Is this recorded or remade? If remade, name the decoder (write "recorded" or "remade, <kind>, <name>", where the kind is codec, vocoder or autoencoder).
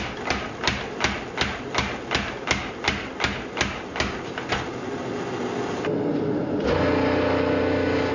recorded